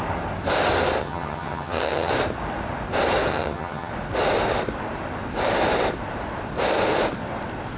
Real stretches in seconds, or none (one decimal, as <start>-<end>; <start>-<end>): 0.0-1.0; 2.1-3.3; 3.9-7.8